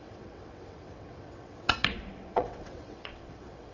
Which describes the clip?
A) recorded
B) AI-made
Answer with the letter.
B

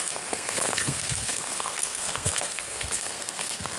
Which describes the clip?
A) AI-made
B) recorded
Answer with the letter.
A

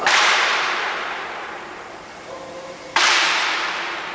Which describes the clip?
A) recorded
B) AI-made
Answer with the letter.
B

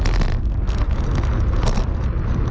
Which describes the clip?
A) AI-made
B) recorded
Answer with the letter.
B